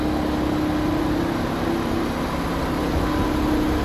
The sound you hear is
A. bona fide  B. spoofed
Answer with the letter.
A